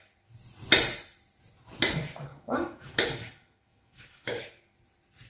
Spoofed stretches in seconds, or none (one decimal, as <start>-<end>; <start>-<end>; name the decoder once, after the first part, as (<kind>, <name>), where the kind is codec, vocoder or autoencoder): 2.3-4.4 (autoencoder, DAC-VAE)